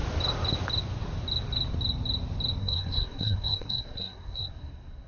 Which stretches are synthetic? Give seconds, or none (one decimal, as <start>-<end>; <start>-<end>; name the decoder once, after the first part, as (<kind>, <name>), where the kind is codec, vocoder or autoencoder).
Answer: 2.6-5.1 (codec, SNAC)